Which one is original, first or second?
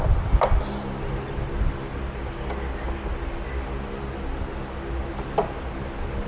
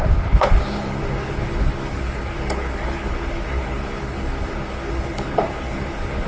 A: first